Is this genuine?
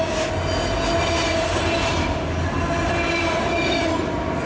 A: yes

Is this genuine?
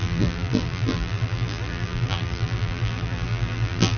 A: no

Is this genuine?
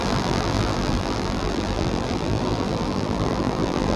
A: no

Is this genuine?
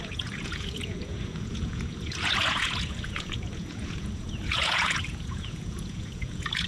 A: no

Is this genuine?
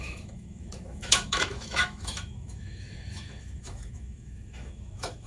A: no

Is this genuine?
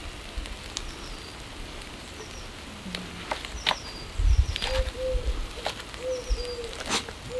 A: yes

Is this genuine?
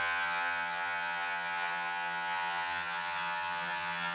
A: no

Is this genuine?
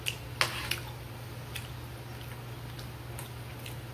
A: yes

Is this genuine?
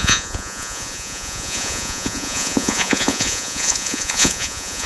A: no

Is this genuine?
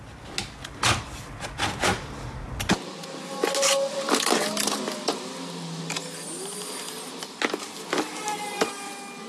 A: yes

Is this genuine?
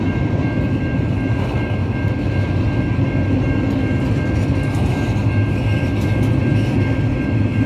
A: yes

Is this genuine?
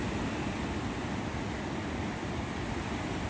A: no